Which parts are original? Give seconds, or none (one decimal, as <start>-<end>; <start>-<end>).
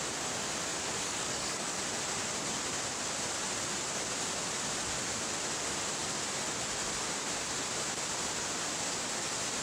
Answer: 0.0-0.7; 1.8-9.6